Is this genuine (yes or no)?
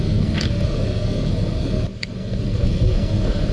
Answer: no